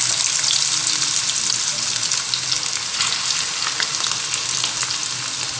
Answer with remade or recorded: recorded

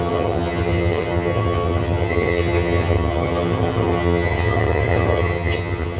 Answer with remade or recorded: remade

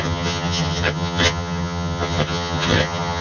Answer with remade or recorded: remade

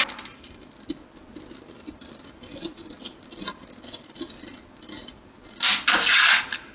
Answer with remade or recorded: recorded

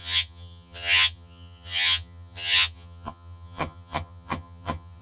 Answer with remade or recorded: remade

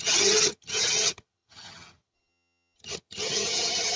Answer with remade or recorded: remade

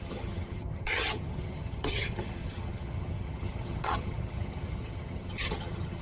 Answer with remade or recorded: remade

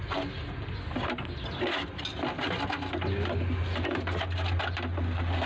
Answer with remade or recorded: recorded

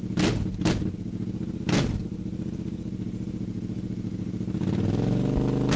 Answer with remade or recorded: recorded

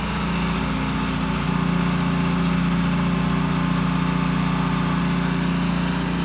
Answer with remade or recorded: recorded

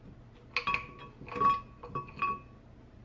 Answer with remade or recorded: recorded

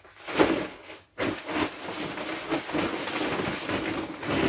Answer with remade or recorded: recorded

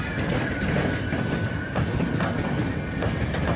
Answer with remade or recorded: recorded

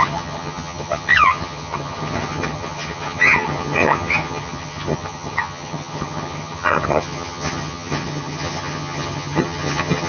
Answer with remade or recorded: remade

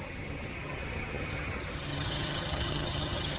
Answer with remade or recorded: remade